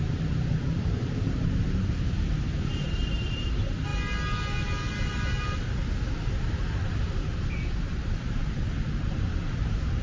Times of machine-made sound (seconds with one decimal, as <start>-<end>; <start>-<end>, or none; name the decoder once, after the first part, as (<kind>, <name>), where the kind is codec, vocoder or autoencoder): 0.0-3.9 (vocoder, BigVGAN v2); 7.8-8.4; 9.1-10.0